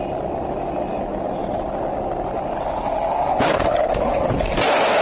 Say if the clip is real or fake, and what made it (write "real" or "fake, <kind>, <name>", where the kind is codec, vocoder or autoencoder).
real